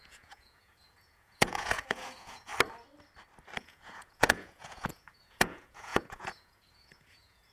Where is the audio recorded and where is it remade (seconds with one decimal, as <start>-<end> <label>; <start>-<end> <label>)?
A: 0.0-2.5 remade; 2.5-3.6 recorded; 3.6-7.5 remade